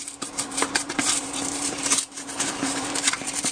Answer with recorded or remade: remade